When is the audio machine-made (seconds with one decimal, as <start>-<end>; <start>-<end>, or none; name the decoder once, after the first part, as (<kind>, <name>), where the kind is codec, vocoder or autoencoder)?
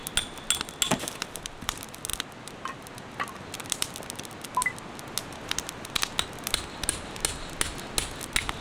none